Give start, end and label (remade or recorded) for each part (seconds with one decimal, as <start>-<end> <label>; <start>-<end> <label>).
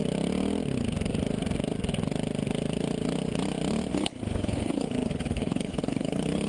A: 0.0-3.9 recorded; 3.9-6.5 remade